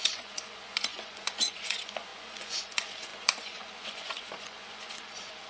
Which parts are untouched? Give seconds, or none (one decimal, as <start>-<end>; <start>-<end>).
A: none